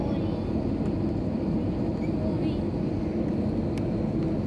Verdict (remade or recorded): recorded